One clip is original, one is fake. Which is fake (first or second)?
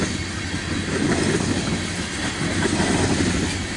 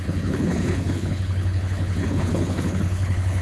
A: second